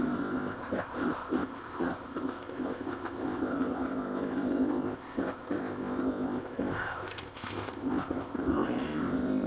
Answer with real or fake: fake